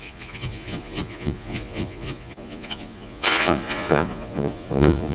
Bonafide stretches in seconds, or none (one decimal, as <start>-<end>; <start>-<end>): none